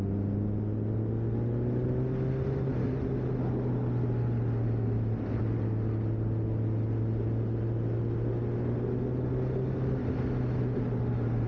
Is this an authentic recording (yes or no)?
yes